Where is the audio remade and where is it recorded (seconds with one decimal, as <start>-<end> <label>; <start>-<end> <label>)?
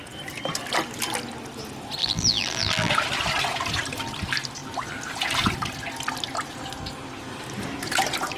0.0-2.0 recorded; 2.0-2.9 remade; 2.9-8.4 recorded